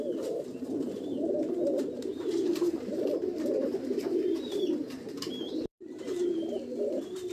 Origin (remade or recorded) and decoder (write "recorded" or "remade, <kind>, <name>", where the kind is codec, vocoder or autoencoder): remade, vocoder, BigVGAN v2